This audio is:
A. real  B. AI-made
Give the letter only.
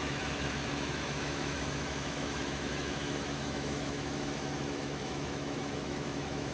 B